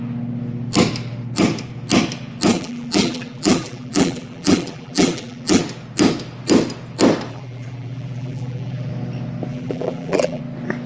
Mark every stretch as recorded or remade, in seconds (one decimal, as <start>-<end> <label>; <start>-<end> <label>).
0.0-2.5 recorded; 2.5-5.6 remade; 5.6-7.3 recorded; 7.3-8.9 remade; 8.9-9.5 recorded; 9.5-10.4 remade; 10.4-10.9 recorded